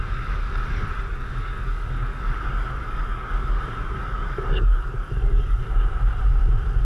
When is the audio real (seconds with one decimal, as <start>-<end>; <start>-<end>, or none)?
5.6-6.8